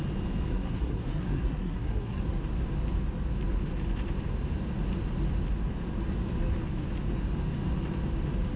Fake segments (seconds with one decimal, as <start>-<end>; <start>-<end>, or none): 0.5-2.2